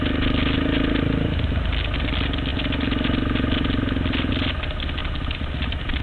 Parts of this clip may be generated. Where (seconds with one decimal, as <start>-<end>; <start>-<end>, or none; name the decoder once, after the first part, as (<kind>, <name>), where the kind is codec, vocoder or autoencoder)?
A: 5.0-6.0 (vocoder, BigVGAN v2)